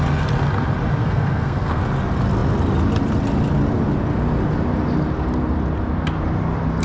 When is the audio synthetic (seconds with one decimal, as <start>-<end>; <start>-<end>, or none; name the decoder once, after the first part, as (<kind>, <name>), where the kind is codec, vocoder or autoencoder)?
1.0-1.8 (codec, SNAC)

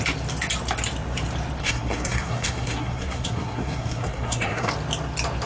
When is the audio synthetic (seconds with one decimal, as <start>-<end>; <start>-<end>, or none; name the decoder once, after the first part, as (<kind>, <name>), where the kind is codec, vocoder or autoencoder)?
1.6-4.7 (codec, SNAC)

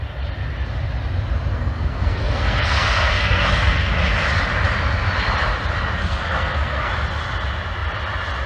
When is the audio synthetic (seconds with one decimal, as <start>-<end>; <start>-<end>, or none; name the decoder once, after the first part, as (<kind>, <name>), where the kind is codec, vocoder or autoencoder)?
1.5-3.9 (codec, SNAC); 6.0-6.9

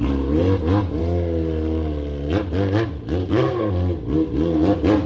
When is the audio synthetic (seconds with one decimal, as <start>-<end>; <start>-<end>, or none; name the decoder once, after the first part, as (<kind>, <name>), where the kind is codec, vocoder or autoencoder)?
3.2-3.7 (codec, SNAC)

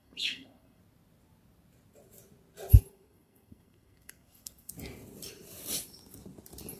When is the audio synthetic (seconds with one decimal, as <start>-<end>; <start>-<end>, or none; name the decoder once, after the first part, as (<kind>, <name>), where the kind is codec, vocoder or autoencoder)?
0.0-0.8 (codec, SNAC); 2.9-4.7